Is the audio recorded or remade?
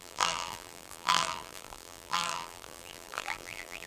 remade